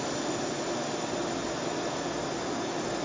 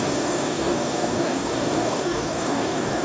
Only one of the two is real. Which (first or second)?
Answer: first